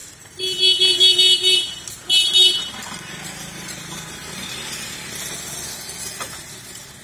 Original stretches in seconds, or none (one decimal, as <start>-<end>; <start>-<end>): 0.0-7.0